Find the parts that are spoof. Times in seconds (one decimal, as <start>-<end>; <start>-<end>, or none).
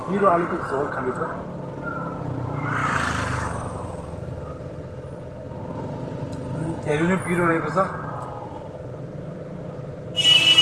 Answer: 0.0-2.8; 7.5-10.6